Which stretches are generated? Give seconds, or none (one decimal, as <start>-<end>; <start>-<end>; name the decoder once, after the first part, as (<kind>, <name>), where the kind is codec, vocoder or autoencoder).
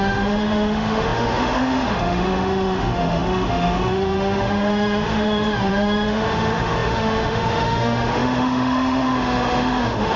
0.0-10.2 (autoencoder, DAC-VAE)